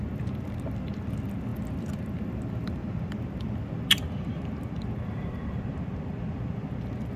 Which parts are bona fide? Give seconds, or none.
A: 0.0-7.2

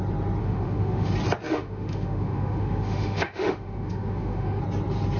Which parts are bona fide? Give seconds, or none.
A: 0.0-0.4; 1.1-1.5; 4.6-5.2